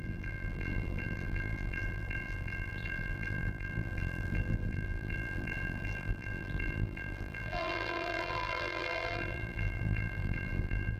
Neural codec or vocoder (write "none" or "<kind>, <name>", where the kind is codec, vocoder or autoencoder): vocoder, BigVGAN v2